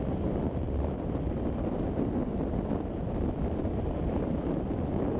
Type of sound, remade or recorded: remade